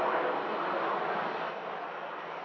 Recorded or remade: recorded